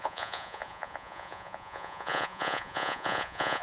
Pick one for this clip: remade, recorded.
remade